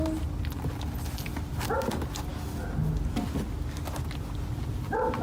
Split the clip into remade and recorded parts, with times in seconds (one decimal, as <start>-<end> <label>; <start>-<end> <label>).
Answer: 0.0-5.2 recorded